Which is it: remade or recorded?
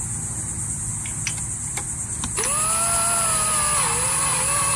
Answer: recorded